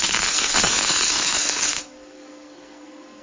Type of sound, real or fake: fake